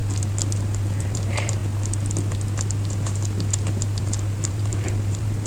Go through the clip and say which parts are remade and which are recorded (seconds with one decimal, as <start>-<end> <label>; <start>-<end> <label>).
0.0-1.0 recorded; 1.0-1.6 remade; 1.6-4.0 recorded; 4.0-5.5 remade